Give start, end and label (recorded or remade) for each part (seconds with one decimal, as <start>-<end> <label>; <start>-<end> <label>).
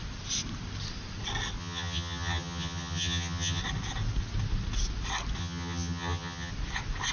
0.0-1.6 recorded; 1.6-3.6 remade; 3.6-5.4 recorded; 5.4-6.5 remade; 6.5-7.1 recorded